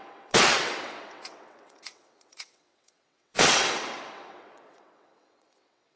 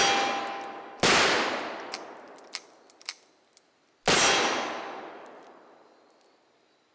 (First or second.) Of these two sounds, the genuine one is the second